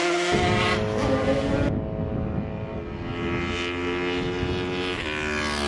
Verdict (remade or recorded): recorded